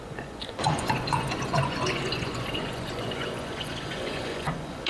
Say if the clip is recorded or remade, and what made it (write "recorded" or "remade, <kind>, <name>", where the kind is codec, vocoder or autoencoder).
remade, vocoder, Vocos